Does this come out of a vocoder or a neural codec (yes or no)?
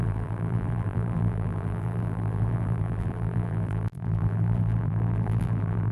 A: yes